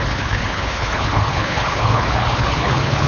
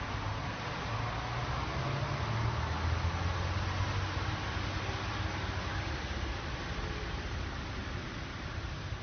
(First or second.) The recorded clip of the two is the second